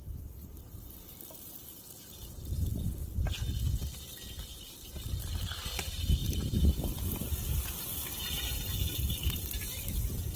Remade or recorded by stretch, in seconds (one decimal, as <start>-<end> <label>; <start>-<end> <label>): 0.0-10.4 recorded